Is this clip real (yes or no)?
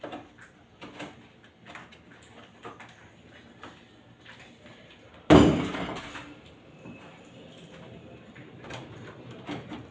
yes